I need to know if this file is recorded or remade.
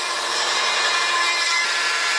remade